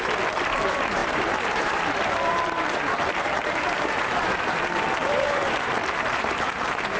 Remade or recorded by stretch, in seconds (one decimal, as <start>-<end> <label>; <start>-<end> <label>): 0.0-7.0 remade